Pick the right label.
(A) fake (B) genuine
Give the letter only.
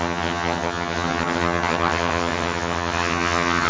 A